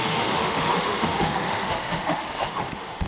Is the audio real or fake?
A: fake